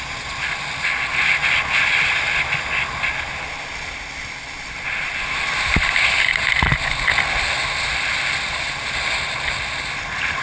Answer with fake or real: real